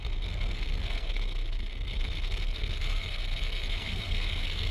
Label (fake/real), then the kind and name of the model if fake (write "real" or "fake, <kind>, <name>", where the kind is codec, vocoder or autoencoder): fake, codec, SNAC